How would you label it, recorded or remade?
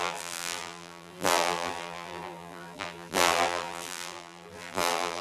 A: remade